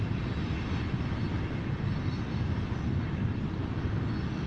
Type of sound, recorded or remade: recorded